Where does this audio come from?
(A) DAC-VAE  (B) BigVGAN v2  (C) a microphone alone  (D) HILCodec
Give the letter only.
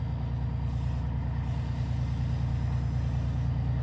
C